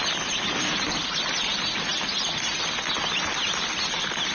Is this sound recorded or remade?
recorded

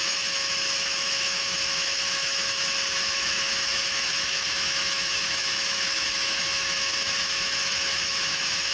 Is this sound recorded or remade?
remade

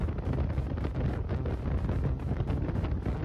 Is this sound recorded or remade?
recorded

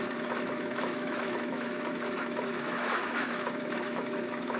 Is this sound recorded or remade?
remade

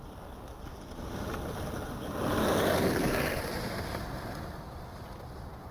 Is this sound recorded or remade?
recorded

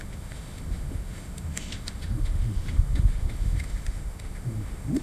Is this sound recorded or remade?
remade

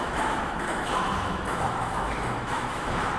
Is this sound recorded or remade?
remade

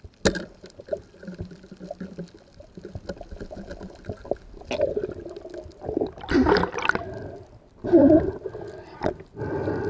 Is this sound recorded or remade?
recorded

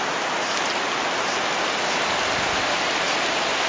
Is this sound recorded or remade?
recorded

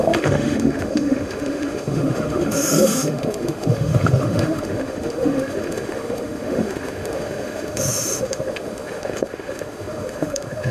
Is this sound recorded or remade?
remade